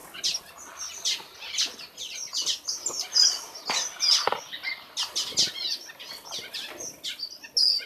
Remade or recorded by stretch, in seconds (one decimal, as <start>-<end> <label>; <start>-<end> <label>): 0.0-7.9 recorded